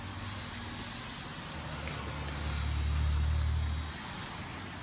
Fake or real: real